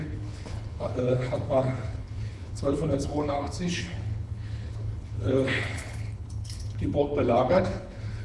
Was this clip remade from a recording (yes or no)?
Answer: yes